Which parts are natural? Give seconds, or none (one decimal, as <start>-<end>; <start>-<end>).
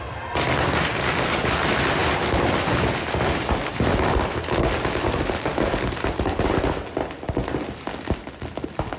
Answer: 0.0-9.0